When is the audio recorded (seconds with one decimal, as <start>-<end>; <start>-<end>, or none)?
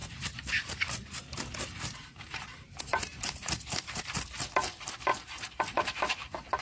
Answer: 4.0-5.1; 5.8-6.6